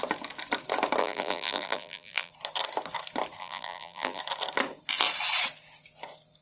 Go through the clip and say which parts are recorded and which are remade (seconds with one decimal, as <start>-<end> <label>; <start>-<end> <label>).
0.0-1.0 recorded; 1.0-2.3 remade; 2.3-3.4 recorded; 3.4-4.2 remade; 4.2-6.4 recorded